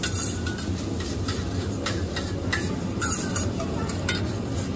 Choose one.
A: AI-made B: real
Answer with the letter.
B